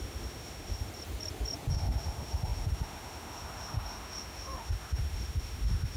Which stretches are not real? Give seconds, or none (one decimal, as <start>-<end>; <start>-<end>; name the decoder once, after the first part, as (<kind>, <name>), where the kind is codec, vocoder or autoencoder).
0.0-0.9 (autoencoder, DAC-VAE); 1.7-6.0